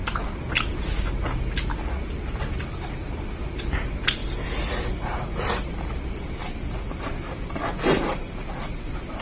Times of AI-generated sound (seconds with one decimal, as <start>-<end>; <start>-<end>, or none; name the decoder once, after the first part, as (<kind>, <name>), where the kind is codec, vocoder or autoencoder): 4.2-9.2 (vocoder, BigVGAN v2)